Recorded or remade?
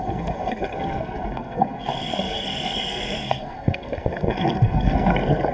remade